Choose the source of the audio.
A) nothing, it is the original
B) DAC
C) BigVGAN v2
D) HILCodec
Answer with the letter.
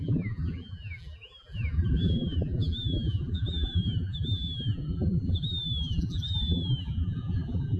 C